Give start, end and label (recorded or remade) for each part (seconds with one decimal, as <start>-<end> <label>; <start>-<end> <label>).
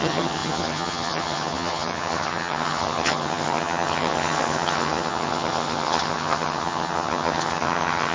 0.0-8.1 remade